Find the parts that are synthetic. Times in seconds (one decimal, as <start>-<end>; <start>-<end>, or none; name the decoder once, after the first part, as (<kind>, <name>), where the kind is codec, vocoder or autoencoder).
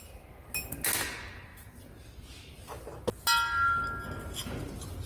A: none